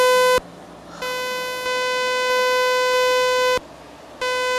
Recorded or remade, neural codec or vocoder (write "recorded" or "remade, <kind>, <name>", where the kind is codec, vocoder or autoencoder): recorded